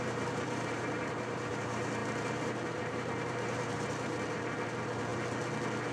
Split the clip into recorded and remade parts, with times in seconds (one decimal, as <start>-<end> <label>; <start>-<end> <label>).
0.0-5.1 remade; 5.1-5.9 recorded

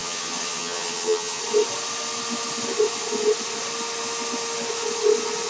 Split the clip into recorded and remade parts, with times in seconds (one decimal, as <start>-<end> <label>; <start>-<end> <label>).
0.0-1.4 remade; 1.4-5.5 recorded

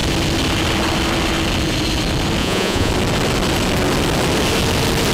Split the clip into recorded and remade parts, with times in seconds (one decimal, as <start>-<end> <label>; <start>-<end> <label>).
0.0-2.4 recorded; 2.4-2.9 remade; 2.9-5.1 recorded

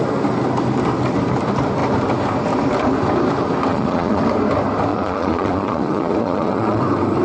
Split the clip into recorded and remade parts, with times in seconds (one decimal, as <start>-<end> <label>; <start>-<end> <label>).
0.0-3.7 recorded; 3.7-4.2 remade; 4.2-4.9 recorded; 4.9-6.8 remade; 6.8-7.2 recorded

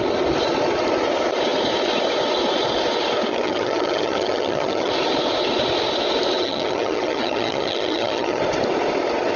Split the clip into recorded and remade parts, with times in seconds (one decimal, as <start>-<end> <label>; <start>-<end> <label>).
0.0-3.3 recorded; 3.3-4.9 remade; 4.9-6.4 recorded; 6.4-8.4 remade; 8.4-9.4 recorded